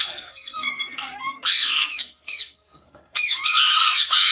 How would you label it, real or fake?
fake